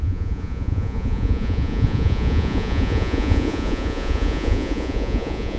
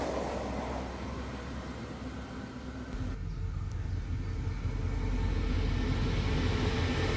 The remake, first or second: first